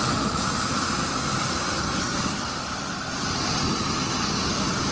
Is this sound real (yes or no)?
yes